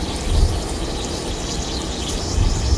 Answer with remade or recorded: recorded